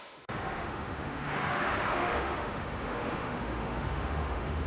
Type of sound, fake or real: fake